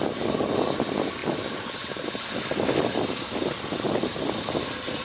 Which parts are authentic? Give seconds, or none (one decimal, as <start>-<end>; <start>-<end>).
0.0-5.0